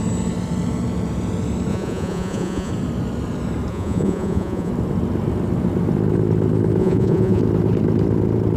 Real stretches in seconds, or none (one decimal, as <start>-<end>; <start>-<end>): 0.0-1.7; 2.7-3.7; 4.7-6.8; 7.4-8.6